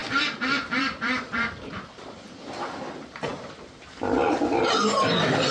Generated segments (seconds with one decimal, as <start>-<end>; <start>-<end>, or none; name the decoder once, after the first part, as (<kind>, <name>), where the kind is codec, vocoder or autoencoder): 0.0-2.7 (vocoder, BigVGAN v2)